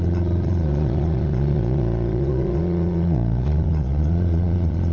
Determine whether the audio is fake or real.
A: fake